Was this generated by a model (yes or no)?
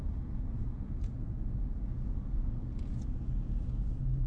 yes